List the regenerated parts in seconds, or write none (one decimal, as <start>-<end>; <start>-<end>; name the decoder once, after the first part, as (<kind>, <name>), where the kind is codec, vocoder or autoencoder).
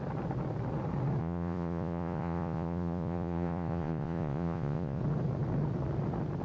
1.2-5.0 (vocoder, Vocos)